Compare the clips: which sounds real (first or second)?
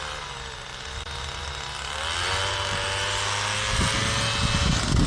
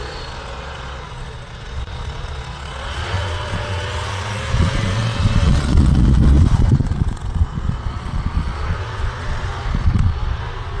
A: first